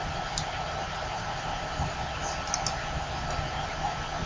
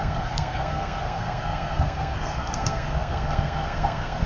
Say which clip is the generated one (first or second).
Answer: second